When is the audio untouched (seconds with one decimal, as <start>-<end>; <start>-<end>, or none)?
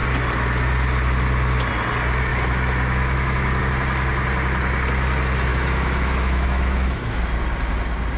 0.0-2.3; 3.6-5.5; 7.2-8.2